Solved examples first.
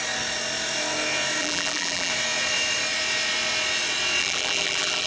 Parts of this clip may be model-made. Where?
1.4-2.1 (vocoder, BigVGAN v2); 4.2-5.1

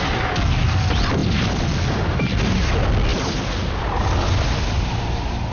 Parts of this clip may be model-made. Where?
none

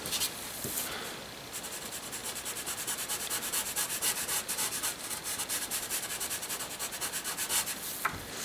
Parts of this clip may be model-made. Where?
2.2-6.5 (vocoder, BigVGAN v2)